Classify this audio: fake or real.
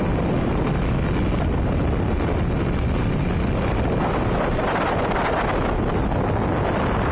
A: real